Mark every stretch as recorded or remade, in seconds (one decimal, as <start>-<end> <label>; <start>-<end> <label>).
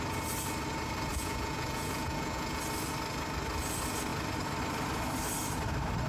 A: 0.0-1.1 recorded; 1.1-2.6 remade; 2.6-6.1 recorded